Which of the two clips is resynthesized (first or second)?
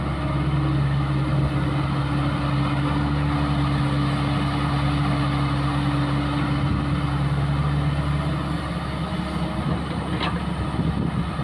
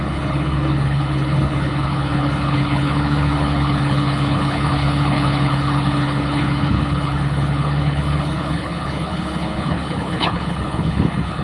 second